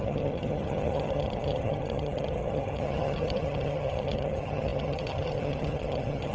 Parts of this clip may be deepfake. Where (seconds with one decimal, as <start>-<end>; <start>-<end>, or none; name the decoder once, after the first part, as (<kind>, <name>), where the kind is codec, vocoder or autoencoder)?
0.0-6.3 (vocoder, HiFi-GAN)